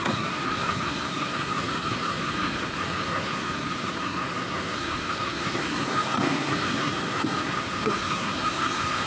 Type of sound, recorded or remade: remade